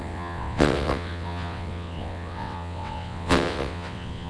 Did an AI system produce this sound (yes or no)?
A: yes